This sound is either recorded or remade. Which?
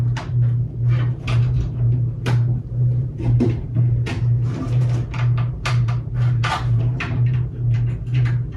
remade